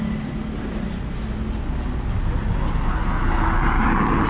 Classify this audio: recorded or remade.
recorded